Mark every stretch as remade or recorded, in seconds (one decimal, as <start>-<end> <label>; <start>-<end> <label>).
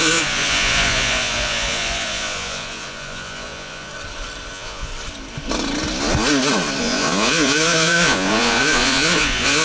0.0-3.9 remade; 3.9-4.5 recorded; 4.5-4.9 remade; 4.9-6.8 recorded; 6.8-9.6 remade